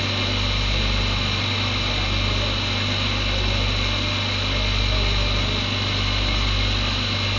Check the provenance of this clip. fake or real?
real